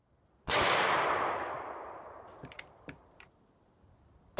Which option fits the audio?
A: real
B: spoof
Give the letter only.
A